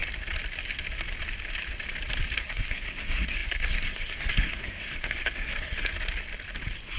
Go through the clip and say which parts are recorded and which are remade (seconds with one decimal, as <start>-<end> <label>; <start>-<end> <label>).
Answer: 0.0-2.4 recorded; 2.4-5.9 remade; 5.9-7.0 recorded